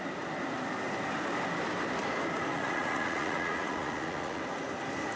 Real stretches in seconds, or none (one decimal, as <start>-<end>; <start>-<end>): 0.0-2.5; 4.4-5.2